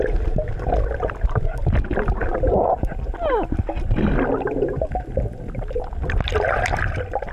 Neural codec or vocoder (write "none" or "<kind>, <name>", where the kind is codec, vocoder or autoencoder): none